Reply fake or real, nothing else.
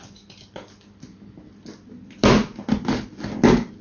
real